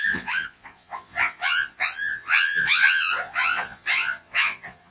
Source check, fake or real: fake